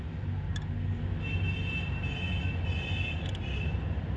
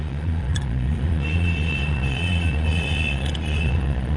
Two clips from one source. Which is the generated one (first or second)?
second